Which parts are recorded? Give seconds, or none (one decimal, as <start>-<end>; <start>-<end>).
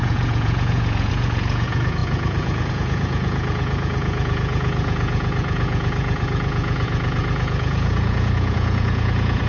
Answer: none